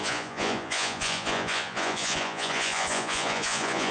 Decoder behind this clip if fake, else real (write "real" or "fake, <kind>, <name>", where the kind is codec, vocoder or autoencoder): fake, vocoder, Vocos